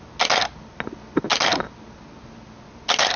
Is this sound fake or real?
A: real